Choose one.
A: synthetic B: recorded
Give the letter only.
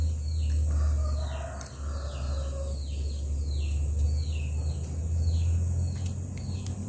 B